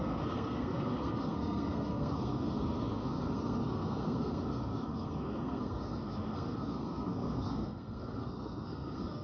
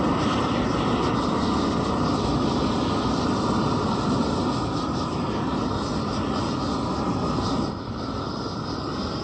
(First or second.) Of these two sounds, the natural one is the second